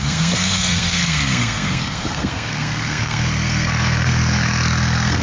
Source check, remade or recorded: remade